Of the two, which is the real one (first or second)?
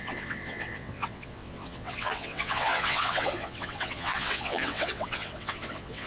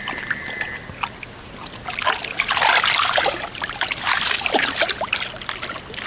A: second